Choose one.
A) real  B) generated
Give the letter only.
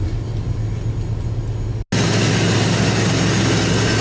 A